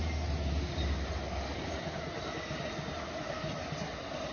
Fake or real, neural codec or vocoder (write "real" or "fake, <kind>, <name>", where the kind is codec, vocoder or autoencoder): real